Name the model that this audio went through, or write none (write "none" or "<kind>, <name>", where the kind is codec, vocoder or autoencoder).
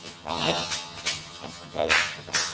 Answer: vocoder, HiFi-GAN